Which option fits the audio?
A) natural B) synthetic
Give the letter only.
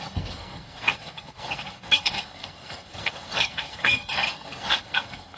B